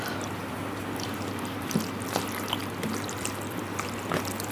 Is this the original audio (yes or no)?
no